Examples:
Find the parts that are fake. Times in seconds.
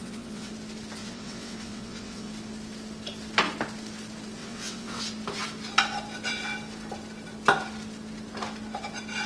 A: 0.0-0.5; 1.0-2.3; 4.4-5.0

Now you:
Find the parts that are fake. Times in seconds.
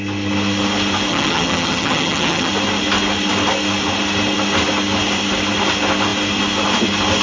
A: 1.1-2.5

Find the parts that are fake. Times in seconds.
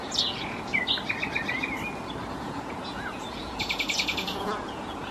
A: 0.0-0.7; 2.4-5.1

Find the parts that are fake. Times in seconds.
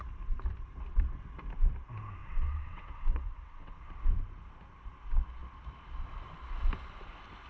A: 2.2-3.8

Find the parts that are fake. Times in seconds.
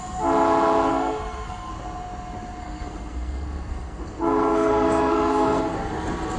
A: 0.9-1.7; 2.6-5.6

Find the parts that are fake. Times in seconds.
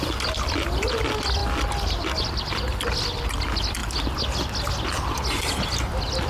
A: none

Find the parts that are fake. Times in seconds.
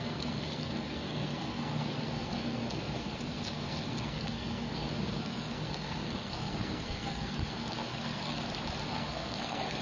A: 0.0-8.4; 8.9-9.8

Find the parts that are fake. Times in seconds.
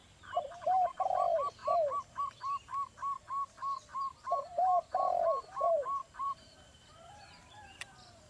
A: 0.0-1.0; 1.6-2.2; 3.9-7.8